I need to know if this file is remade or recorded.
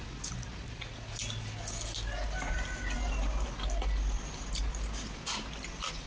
recorded